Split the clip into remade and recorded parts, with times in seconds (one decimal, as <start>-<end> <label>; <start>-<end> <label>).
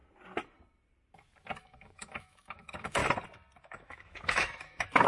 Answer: 0.0-1.6 recorded; 1.6-3.0 remade; 3.0-3.6 recorded; 3.6-5.1 remade